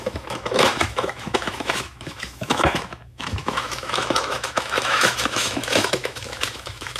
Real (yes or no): no